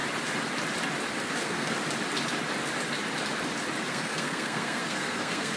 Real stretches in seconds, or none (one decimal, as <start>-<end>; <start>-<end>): 0.0-1.3; 1.8-3.9

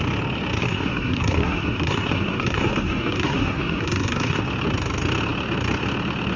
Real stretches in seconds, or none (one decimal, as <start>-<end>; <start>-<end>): 0.0-0.6; 4.4-6.4